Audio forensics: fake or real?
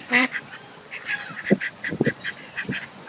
fake